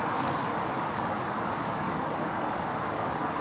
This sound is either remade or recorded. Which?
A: remade